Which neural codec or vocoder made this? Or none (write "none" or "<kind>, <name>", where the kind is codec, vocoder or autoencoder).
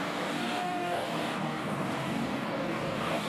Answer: codec, DAC